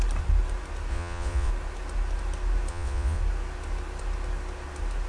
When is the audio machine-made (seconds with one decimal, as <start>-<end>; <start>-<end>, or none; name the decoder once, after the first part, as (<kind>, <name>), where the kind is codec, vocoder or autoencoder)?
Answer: 0.9-1.5 (vocoder, Vocos); 2.7-3.2